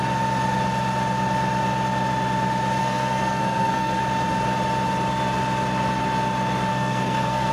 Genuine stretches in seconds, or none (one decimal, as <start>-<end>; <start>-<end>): 0.0-2.8; 4.0-6.7

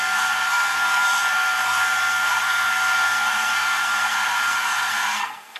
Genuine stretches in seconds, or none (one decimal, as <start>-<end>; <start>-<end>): none

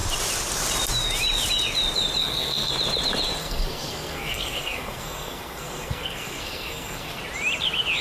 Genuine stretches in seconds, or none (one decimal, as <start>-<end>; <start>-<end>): 0.0-2.2; 2.7-3.4; 7.2-8.0

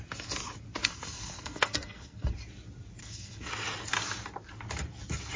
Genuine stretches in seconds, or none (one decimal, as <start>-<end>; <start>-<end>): 0.0-0.8; 2.3-3.0; 3.5-5.4

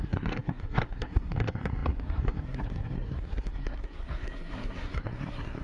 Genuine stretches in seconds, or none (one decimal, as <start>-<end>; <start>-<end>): none

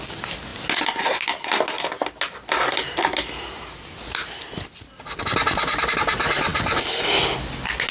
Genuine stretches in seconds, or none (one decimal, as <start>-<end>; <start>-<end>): 0.0-7.9

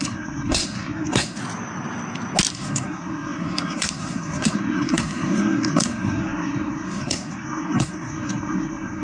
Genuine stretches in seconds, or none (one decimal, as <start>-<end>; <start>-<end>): 1.4-2.5

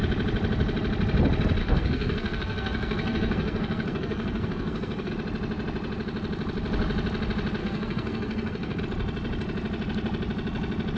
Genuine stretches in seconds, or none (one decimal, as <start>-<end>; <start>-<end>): 0.0-1.6; 5.1-7.6; 8.8-11.0